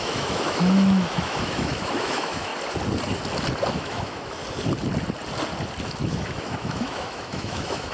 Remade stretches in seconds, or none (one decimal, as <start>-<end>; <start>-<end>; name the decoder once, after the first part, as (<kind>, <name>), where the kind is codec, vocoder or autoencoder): 0.0-2.5 (autoencoder, DAC-VAE); 3.7-4.4; 6.1-7.9